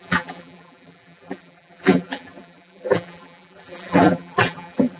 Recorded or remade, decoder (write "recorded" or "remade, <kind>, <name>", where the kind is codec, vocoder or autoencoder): remade, vocoder, BigVGAN v2